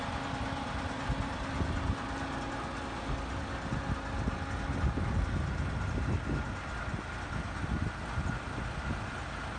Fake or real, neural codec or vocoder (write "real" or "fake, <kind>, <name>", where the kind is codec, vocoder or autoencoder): real